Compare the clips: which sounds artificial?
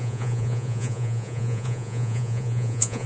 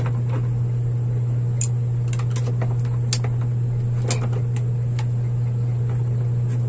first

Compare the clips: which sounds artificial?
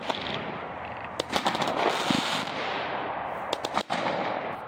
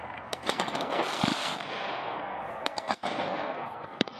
second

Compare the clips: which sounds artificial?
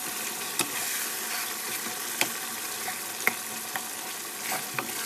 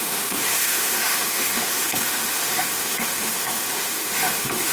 second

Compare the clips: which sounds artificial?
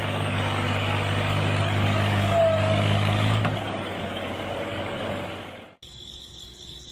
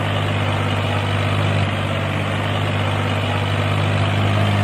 first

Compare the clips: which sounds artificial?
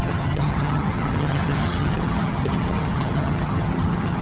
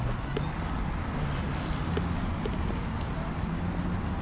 first